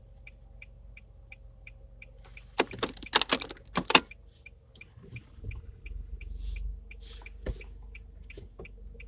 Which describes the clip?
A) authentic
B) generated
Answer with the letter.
A